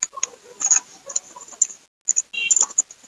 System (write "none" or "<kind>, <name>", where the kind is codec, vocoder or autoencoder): none